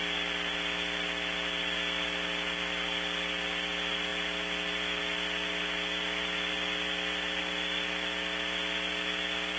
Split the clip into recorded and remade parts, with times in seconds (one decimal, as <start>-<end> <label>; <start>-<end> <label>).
0.0-9.6 recorded